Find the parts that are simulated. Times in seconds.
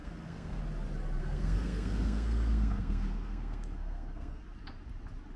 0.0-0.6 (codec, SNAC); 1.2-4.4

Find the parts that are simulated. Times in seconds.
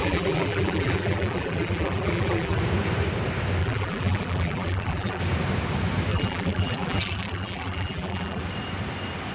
0.0-2.6 (vocoder, BigVGAN v2); 3.6-5.2; 6.1-8.4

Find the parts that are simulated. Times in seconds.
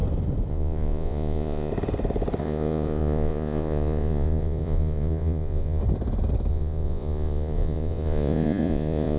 0.5-1.7 (vocoder, Vocos); 2.4-5.8; 6.5-9.2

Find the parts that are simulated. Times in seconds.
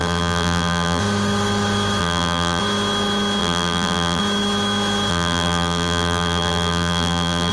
0.0-1.0 (vocoder, BigVGAN v2); 2.0-2.6; 3.4-4.2; 5.1-7.5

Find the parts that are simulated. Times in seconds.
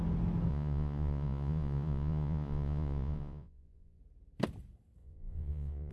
0.5-4.0 (vocoder, Vocos); 5.0-5.9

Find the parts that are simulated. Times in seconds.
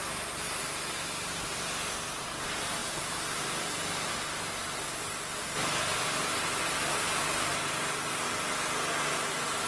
none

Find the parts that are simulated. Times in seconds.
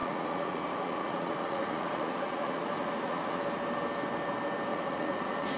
0.0-3.4 (vocoder, Vocos); 4.7-5.6